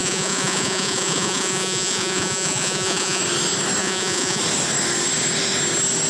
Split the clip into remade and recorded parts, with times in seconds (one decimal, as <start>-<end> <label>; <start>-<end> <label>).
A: 0.0-3.2 remade; 3.2-3.8 recorded; 3.8-4.4 remade; 4.4-6.1 recorded